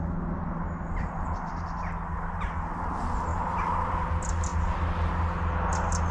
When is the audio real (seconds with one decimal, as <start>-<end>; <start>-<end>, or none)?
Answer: 0.0-3.3; 3.9-6.1